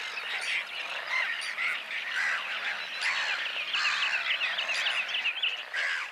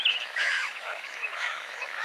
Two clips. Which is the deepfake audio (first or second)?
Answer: second